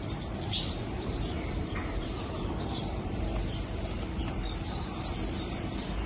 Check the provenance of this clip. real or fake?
fake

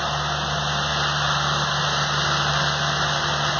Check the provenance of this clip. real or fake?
real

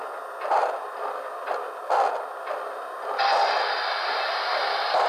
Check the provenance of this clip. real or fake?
real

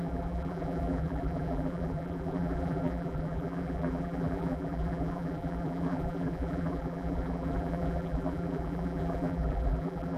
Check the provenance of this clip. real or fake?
fake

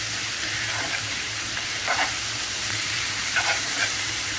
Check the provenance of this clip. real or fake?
fake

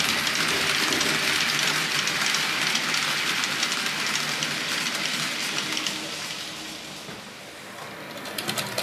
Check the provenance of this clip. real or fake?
real